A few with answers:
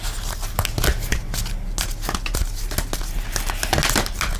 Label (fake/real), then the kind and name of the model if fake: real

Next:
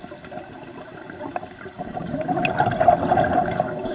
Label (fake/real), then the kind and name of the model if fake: real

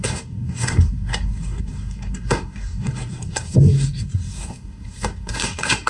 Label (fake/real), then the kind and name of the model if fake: fake, codec, SNAC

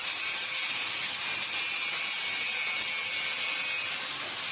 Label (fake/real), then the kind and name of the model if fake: real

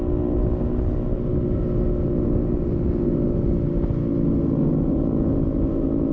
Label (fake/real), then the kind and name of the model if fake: real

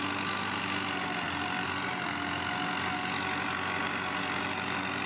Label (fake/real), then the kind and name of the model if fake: real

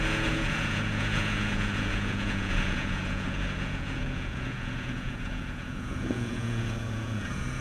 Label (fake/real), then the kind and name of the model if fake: fake, vocoder, Vocos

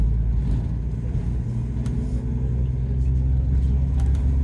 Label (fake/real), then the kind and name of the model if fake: real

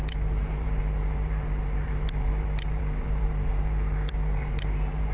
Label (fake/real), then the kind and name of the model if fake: fake, vocoder, BigVGAN v2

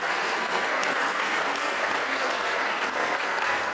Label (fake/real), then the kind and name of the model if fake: fake, codec, SNAC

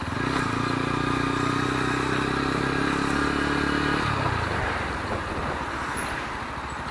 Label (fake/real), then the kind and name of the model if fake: real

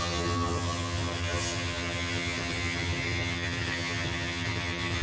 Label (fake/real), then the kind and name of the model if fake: fake, vocoder, HiFi-GAN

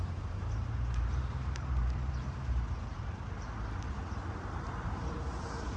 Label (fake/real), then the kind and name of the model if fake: fake, vocoder, BigVGAN v2